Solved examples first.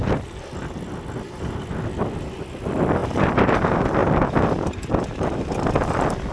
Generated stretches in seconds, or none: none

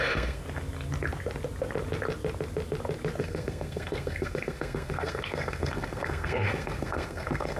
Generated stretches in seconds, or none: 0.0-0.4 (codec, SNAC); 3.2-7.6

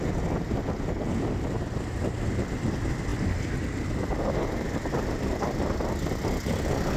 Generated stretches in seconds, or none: none

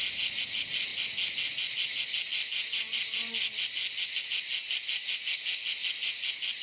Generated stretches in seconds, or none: none

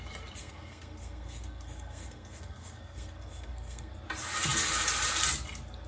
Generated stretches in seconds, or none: 0.4-3.9 (codec, SNAC)

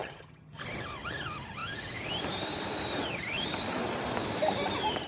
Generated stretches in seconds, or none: 0.0-0.6 (vocoder, HiFi-GAN)

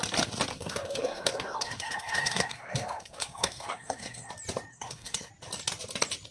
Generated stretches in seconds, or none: 0.5-4.3 (codec, SNAC); 4.7-5.3

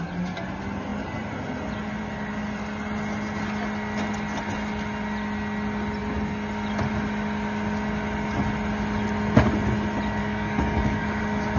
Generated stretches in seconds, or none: 10.2-11.2 (codec, DAC)